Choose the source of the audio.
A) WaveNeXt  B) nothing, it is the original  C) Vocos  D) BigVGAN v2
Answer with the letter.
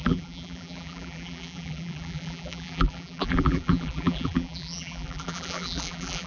D